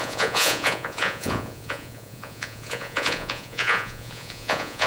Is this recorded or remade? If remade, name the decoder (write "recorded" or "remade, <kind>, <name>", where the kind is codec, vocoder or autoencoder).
remade, vocoder, Vocos